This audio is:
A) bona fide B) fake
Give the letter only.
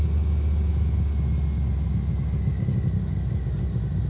A